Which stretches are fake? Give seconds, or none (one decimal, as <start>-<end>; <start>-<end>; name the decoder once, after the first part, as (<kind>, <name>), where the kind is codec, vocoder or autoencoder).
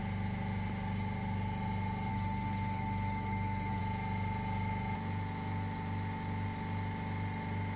2.1-3.8 (autoencoder, DAC-VAE)